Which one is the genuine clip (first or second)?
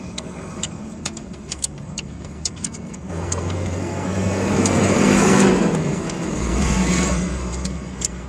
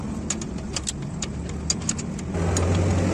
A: second